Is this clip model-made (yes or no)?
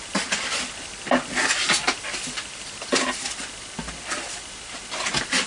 no